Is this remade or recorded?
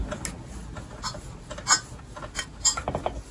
recorded